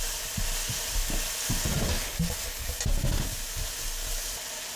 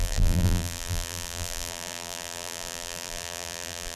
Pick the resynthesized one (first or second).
second